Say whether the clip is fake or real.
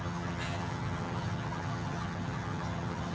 fake